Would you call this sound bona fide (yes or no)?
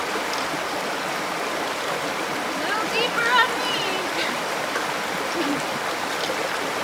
yes